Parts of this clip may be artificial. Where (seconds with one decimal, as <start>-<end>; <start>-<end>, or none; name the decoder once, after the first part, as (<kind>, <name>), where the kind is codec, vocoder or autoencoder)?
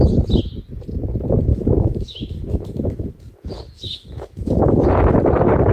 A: 1.5-4.9 (autoencoder, DAC-VAE)